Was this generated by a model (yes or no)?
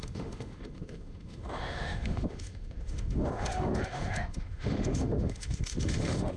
yes